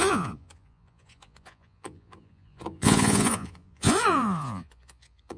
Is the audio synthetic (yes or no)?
yes